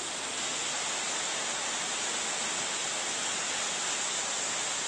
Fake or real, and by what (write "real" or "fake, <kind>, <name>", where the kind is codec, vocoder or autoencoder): real